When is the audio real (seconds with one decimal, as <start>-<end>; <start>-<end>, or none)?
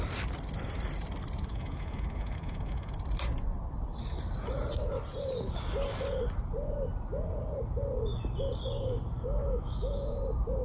0.0-1.5; 2.9-9.4; 10.2-10.6